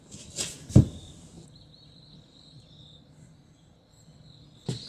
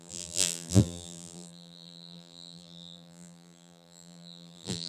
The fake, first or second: second